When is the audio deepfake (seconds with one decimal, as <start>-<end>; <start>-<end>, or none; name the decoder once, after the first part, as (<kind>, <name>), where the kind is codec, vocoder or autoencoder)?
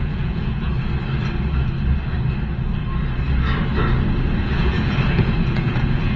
0.0-0.7 (vocoder, Vocos); 4.4-6.2